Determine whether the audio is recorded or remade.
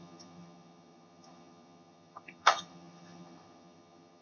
remade